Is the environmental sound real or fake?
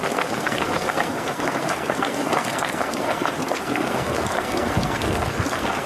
fake